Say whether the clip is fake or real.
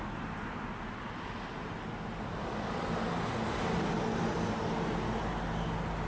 real